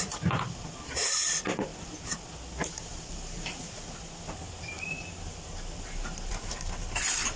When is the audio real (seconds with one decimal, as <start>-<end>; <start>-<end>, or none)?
0.0-7.4